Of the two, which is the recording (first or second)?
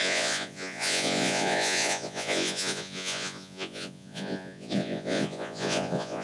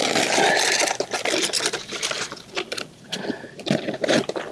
second